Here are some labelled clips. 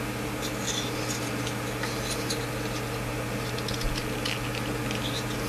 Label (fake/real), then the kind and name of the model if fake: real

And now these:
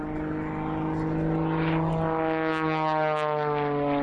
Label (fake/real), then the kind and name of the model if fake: real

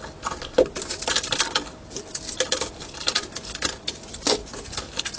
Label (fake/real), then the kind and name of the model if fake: real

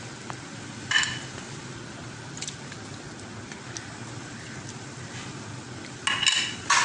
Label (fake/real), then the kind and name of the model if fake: real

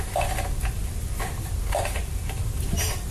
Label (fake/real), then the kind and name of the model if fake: real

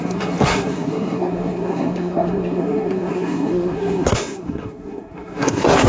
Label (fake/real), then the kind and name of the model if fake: fake, codec, SNAC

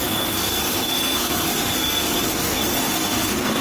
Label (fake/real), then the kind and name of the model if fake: fake, codec, SNAC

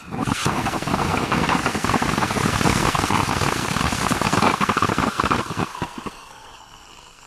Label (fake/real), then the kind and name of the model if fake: fake, codec, SNAC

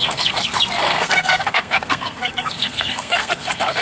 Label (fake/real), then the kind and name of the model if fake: fake, codec, SNAC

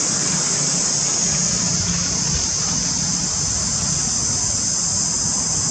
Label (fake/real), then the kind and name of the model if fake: real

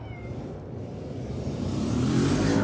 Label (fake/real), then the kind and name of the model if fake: real